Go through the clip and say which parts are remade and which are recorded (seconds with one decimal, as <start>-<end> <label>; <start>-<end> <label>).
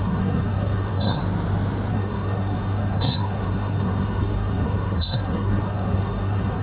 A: 0.0-1.2 remade; 1.2-1.9 recorded; 1.9-6.6 remade